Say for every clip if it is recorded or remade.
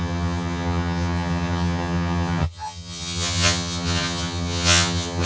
remade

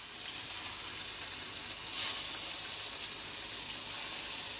recorded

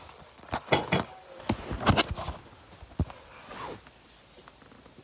recorded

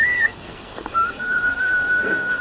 remade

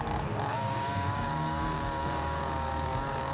remade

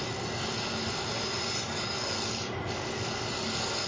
recorded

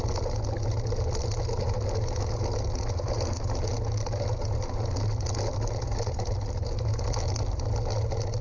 recorded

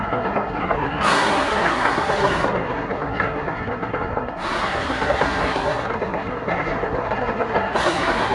remade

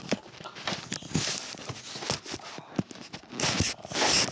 recorded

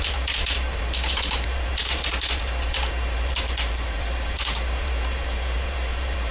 remade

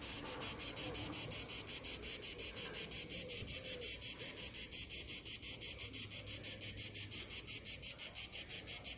recorded